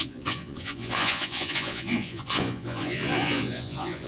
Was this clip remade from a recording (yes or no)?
yes